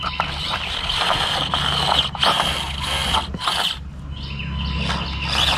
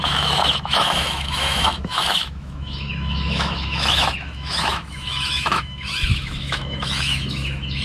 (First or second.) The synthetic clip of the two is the second